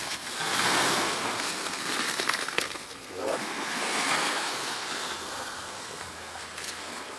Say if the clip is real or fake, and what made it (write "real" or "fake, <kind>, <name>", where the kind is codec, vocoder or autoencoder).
fake, codec, SNAC